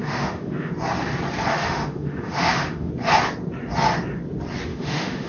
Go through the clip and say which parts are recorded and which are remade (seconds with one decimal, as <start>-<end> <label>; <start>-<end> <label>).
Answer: 0.0-0.7 remade; 0.7-1.5 recorded; 1.5-2.9 remade; 2.9-4.7 recorded; 4.7-5.3 remade